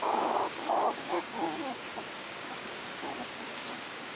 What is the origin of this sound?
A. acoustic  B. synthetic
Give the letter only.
B